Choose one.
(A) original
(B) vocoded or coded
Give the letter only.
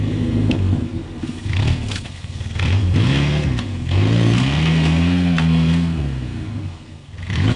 B